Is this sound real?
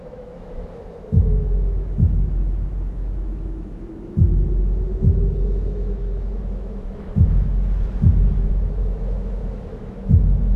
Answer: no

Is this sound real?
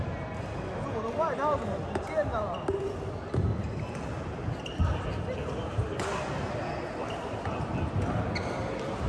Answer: yes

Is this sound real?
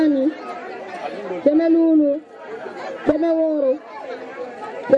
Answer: yes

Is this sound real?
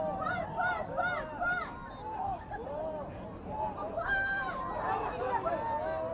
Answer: yes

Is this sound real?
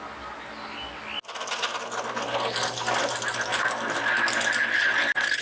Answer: yes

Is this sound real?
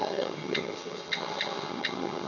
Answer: no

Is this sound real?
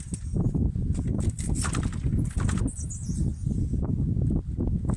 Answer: yes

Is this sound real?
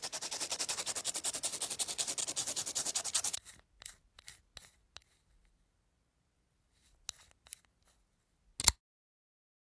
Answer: yes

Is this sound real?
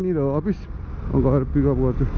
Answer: yes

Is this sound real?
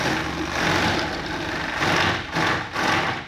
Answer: yes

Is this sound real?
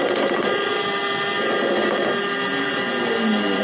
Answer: yes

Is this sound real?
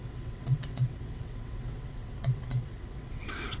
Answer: no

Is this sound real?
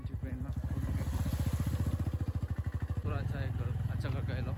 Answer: yes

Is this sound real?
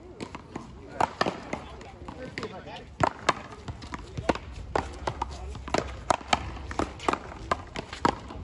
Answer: yes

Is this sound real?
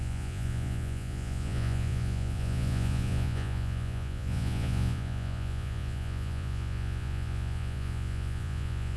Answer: no